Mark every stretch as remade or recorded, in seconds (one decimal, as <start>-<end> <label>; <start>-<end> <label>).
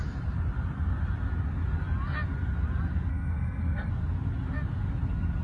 0.0-3.1 recorded; 3.1-3.9 remade; 3.9-5.4 recorded